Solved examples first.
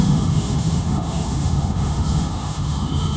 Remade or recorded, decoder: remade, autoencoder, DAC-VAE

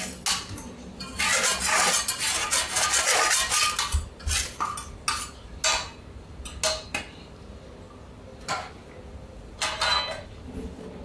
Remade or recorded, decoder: recorded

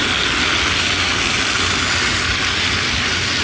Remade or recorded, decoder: recorded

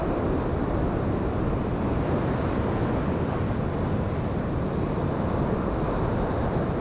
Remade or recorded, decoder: recorded